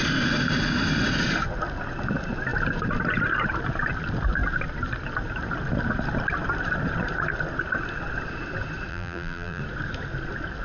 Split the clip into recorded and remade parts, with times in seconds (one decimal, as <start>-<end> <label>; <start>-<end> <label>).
0.0-8.9 recorded; 8.9-9.6 remade; 9.6-10.6 recorded